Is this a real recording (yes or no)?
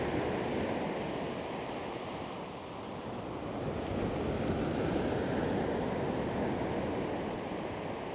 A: yes